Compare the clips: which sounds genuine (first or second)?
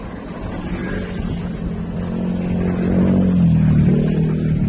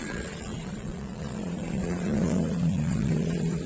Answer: first